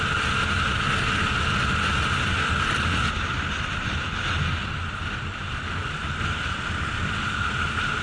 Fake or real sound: real